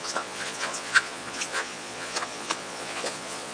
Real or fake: fake